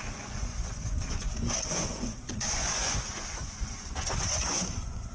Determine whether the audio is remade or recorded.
remade